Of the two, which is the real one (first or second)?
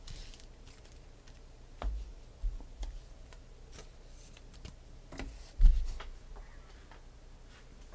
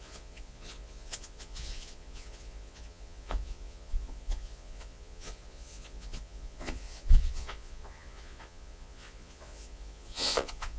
first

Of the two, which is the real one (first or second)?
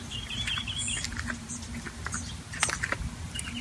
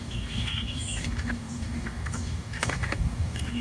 first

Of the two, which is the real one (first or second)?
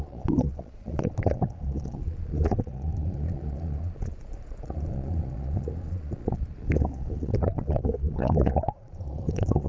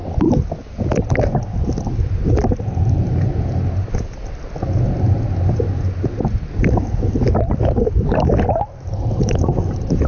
second